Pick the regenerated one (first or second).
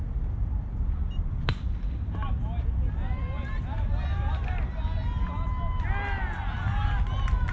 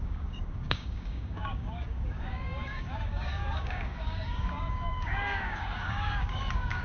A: second